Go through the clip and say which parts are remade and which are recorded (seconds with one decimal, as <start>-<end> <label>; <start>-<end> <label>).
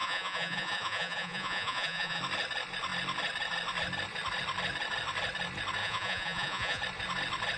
0.0-2.2 remade; 2.2-5.8 recorded; 5.8-6.8 remade; 6.8-7.6 recorded